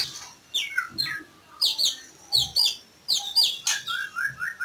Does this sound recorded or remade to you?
recorded